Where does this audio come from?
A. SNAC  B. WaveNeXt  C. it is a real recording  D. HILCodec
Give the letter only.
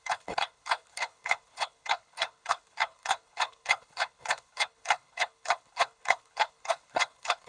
D